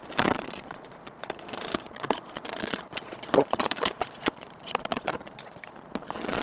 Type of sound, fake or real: fake